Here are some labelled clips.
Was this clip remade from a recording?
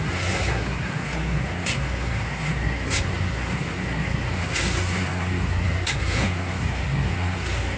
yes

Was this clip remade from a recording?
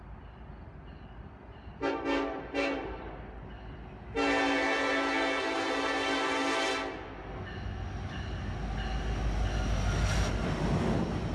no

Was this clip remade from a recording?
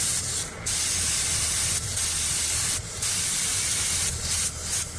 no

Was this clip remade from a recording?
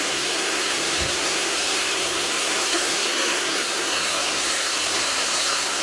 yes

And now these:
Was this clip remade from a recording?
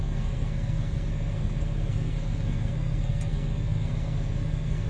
yes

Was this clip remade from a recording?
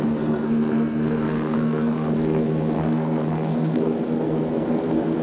yes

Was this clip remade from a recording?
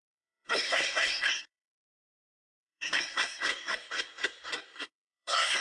yes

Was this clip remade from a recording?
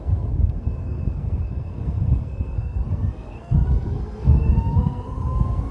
yes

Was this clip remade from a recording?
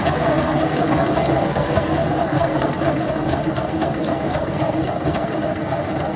yes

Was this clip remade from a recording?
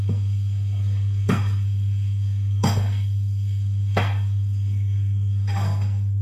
yes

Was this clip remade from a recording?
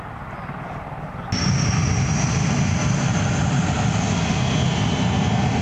no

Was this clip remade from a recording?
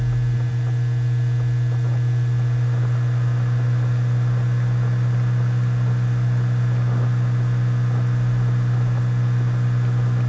no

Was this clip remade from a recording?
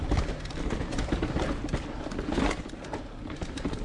no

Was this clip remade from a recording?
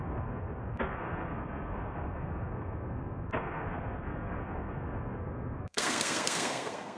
yes